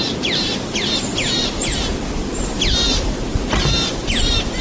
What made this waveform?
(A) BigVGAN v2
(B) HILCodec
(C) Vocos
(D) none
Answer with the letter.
D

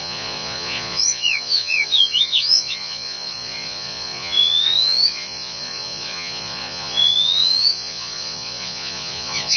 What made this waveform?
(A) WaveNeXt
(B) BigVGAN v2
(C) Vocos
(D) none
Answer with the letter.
C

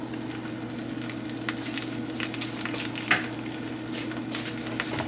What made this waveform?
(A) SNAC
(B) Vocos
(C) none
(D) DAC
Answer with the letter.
C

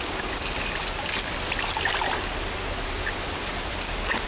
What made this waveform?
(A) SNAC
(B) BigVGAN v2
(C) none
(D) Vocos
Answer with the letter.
C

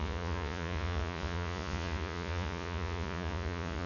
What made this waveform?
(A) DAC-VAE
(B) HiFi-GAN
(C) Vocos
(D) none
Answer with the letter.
C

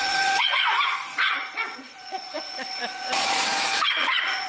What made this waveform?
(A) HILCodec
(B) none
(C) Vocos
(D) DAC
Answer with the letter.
C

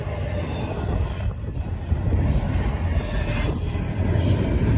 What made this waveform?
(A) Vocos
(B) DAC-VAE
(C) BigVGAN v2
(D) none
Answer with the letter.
D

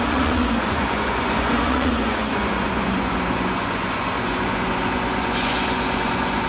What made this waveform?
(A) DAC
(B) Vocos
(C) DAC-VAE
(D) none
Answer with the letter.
B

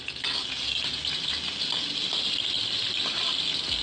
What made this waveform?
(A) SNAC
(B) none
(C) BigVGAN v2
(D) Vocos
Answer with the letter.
B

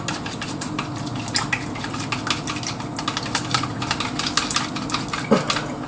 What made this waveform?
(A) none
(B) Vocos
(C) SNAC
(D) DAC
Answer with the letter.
A